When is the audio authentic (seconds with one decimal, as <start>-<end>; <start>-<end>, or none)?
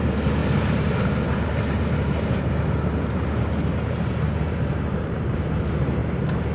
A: 0.0-3.7; 5.6-6.0